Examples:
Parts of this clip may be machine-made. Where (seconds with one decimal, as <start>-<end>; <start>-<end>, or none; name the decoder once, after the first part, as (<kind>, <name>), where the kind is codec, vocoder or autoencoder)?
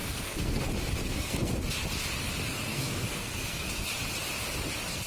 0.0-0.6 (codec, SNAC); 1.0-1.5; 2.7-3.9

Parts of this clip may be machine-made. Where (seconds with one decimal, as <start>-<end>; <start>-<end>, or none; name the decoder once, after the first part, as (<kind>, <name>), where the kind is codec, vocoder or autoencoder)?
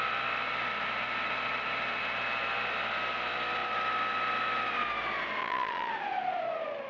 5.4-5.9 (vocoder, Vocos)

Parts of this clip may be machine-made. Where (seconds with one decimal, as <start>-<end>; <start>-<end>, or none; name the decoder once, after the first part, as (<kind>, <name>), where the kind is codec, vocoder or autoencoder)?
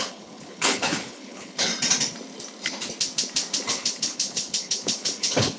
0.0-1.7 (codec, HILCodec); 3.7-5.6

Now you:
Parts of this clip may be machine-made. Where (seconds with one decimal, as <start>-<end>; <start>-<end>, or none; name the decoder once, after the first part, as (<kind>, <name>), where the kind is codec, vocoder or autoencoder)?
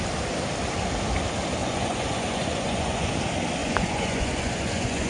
1.6-3.1 (vocoder, Vocos); 3.6-5.1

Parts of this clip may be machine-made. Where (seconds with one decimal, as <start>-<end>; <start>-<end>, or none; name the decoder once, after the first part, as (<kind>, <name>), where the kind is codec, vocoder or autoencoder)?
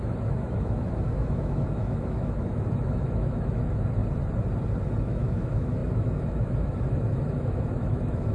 0.0-4.0 (autoencoder, DAC-VAE); 5.0-8.3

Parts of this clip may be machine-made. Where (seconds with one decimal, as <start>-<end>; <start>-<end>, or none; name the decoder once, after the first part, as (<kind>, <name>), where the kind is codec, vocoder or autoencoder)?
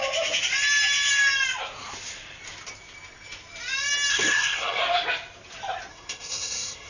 4.1-4.8 (codec, SNAC); 5.9-6.9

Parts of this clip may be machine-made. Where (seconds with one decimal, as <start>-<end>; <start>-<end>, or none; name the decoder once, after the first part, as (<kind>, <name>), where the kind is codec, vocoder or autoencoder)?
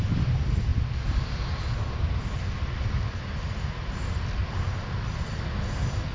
0.7-4.4 (vocoder, BigVGAN v2)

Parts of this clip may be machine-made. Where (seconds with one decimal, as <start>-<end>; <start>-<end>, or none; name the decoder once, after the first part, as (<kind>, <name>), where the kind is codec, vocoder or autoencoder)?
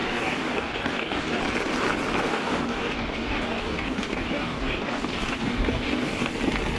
0.0-1.4 (codec, DAC); 2.3-6.3